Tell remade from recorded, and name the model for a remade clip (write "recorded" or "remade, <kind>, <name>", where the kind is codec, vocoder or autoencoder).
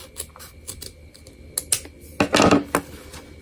recorded